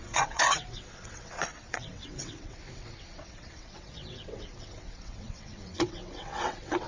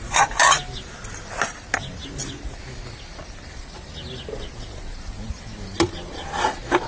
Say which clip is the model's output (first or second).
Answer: first